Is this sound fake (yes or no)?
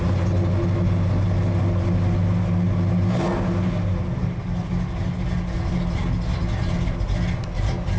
no